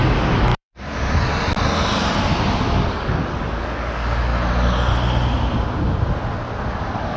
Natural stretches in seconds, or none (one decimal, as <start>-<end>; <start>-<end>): 1.3-2.9; 4.3-6.7